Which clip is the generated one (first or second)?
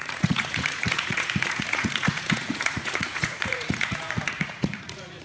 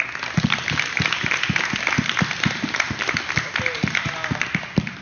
first